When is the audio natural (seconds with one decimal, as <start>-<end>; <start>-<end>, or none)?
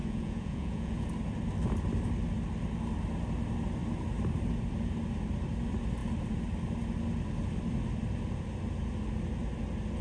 1.1-10.0